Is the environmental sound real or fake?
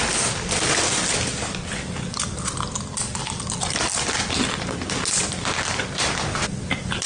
real